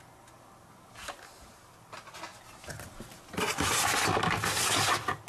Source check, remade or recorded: recorded